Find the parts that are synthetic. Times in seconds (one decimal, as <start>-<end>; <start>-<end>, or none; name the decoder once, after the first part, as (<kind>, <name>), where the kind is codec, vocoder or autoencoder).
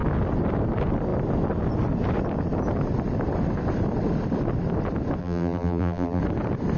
5.2-6.2 (vocoder, BigVGAN v2)